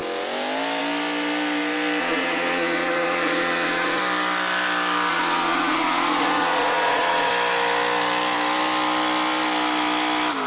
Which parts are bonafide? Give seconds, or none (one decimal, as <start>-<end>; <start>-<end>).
0.0-2.0; 4.0-5.1; 7.3-10.5